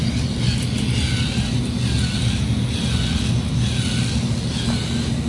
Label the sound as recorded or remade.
recorded